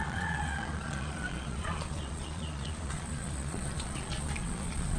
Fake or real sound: fake